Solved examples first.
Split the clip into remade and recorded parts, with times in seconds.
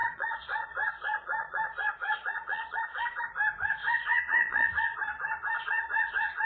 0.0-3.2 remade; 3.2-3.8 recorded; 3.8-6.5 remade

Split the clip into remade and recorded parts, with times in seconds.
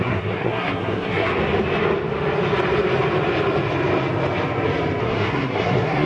0.0-1.3 remade; 1.3-5.0 recorded; 5.0-6.1 remade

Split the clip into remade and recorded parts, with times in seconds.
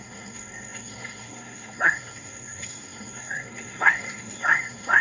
0.0-5.0 remade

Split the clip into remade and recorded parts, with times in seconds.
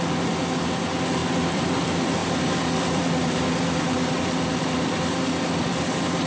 0.0-1.2 recorded; 1.2-1.8 remade; 1.8-2.2 recorded; 2.2-5.8 remade; 5.8-6.3 recorded